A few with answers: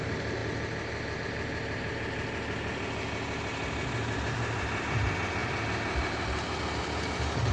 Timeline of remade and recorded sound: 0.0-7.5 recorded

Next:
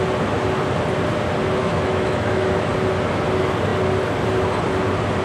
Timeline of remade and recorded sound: 0.0-1.6 recorded; 1.6-2.7 remade; 2.7-5.2 recorded

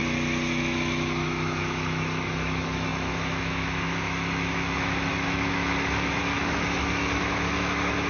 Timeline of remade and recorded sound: 0.0-0.5 recorded; 0.5-8.1 remade

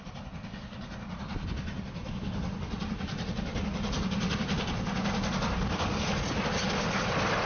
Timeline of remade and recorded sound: 0.0-7.5 recorded